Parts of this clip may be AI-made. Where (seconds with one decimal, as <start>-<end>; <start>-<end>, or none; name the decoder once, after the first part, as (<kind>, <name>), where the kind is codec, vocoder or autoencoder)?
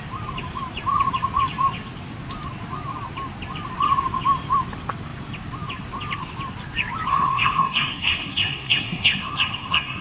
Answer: 7.1-10.0 (codec, SNAC)